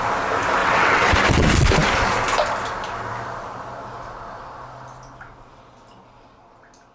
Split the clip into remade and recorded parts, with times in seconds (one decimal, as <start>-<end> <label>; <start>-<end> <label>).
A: 0.0-0.6 recorded; 0.6-1.1 remade; 1.1-6.9 recorded